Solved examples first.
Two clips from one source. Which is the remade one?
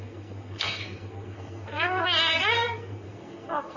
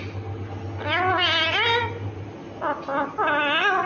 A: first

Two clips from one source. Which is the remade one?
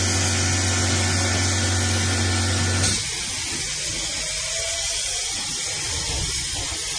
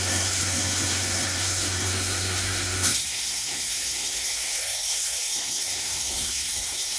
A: second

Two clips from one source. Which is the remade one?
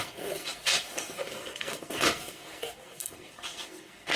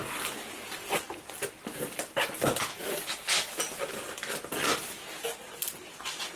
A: first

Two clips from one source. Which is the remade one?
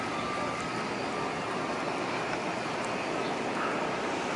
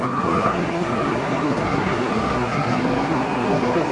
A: second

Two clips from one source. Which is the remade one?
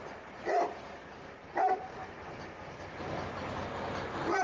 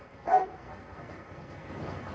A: second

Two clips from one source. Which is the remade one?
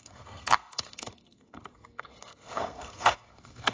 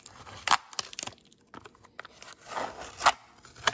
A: first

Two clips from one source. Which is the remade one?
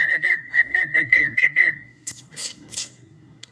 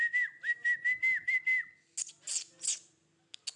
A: first